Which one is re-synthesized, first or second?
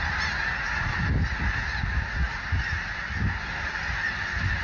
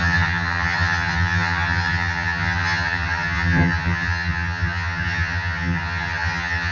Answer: second